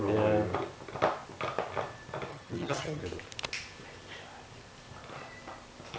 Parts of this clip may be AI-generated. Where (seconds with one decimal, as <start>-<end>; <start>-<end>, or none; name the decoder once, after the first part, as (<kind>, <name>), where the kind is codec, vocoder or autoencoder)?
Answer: 2.3-3.0 (vocoder, HiFi-GAN)

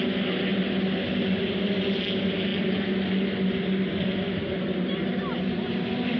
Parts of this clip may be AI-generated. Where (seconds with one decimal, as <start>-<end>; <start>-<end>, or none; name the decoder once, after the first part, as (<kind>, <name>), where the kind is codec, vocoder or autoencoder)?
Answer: none

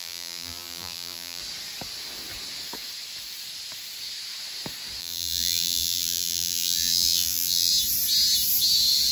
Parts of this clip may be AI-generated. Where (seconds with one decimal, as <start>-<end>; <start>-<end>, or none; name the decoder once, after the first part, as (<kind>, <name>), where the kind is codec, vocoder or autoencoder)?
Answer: 0.0-1.4 (vocoder, BigVGAN v2); 5.0-7.7

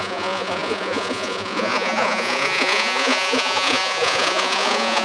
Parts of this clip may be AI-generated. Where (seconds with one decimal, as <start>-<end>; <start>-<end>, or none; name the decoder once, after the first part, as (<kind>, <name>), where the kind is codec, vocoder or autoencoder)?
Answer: 0.0-5.0 (vocoder, Vocos)

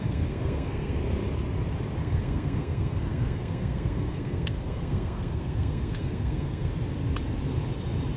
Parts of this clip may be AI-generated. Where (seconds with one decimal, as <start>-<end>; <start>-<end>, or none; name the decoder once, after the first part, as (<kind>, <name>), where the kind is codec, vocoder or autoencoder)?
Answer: 0.0-1.0 (codec, SNAC); 2.0-6.7

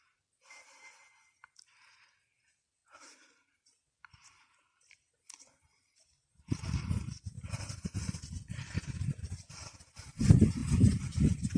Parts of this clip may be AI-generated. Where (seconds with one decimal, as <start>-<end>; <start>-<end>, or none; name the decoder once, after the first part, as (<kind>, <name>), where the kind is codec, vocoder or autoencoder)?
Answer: none

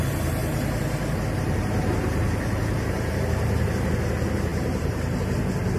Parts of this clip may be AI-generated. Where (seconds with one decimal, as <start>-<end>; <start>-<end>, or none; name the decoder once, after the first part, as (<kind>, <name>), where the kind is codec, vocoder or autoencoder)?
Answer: 0.4-3.9 (vocoder, BigVGAN v2); 4.5-5.2

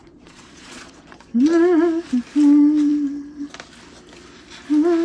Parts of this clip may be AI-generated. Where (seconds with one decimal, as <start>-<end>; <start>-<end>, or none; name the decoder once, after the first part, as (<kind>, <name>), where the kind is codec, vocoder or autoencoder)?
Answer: 0.0-1.6 (vocoder, Vocos)